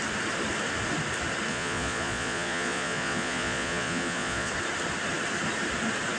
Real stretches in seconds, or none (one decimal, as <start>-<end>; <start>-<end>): 0.0-1.5; 4.5-6.2